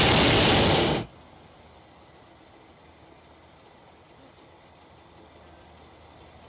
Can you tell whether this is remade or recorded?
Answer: recorded